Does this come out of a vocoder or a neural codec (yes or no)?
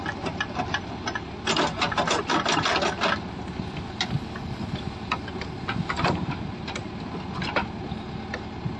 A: no